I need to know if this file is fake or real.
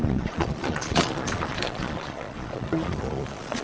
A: fake